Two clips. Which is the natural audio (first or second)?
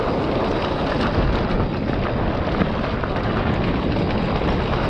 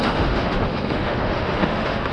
first